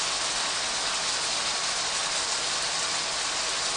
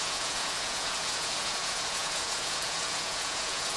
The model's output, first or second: second